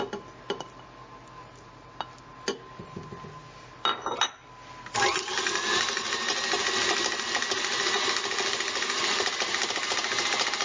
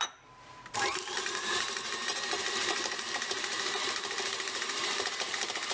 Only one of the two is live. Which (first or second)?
first